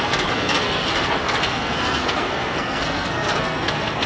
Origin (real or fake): fake